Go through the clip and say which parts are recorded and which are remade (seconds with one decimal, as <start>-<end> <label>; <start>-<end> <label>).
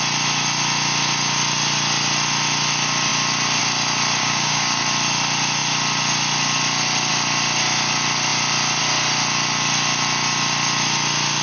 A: 0.0-4.2 recorded; 4.2-4.8 remade; 4.8-11.4 recorded